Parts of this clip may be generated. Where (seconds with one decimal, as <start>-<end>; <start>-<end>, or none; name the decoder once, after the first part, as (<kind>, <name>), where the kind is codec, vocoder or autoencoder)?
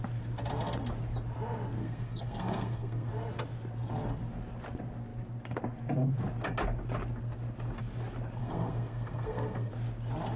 1.8-3.1 (codec, SNAC); 8.4-9.7